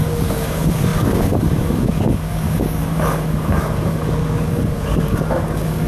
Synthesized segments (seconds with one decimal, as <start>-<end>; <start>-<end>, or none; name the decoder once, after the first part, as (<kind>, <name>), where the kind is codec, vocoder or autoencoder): 0.0-5.9 (codec, DAC)